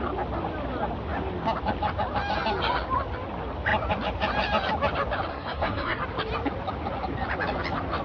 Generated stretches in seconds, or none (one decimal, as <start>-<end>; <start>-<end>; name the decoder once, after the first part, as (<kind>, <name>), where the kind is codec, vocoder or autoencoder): 5.3-6.0 (codec, SNAC)